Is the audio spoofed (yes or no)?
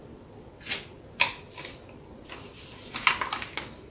no